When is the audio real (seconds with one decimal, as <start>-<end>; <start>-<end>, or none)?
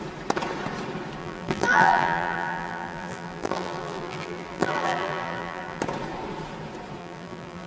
0.0-1.2; 5.8-7.0